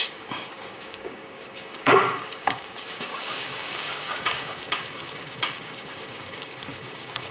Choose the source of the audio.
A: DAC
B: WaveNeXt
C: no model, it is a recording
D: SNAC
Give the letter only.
A